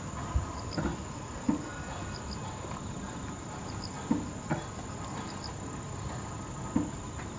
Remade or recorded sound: recorded